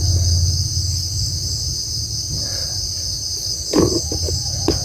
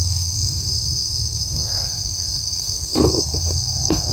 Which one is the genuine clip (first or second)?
first